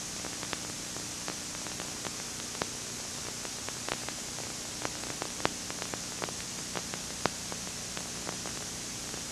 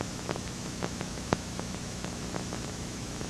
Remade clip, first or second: second